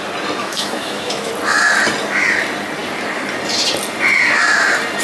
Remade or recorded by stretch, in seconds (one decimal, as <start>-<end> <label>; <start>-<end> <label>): 0.0-0.4 recorded; 0.4-1.3 remade; 1.3-5.0 recorded